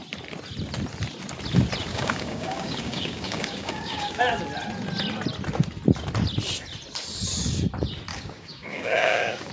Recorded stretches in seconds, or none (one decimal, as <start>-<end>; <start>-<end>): 0.0-1.9; 4.2-8.1